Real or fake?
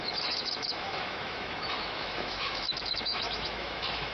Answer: fake